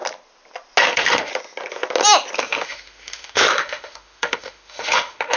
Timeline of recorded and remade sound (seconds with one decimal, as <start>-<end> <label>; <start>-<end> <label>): 0.0-0.8 recorded; 0.8-1.3 remade; 1.3-2.4 recorded; 2.4-5.4 remade